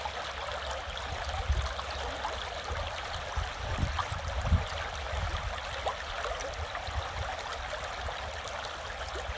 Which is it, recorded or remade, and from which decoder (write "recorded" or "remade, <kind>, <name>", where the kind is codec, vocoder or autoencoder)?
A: recorded